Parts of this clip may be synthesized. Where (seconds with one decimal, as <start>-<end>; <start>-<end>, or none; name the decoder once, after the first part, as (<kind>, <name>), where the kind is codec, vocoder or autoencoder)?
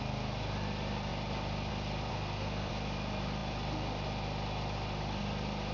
2.1-2.7 (codec, SNAC)